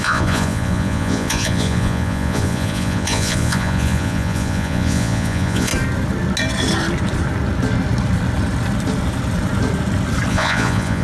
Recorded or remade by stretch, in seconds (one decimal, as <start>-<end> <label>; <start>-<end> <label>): 0.0-5.7 remade; 5.7-10.3 recorded; 10.3-11.0 remade